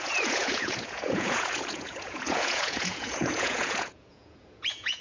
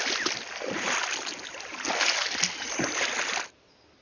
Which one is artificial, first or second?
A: first